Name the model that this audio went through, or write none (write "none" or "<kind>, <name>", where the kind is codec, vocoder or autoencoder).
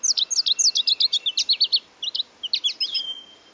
none